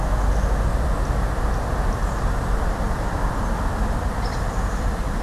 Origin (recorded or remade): recorded